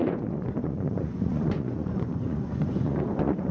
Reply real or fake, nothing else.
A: fake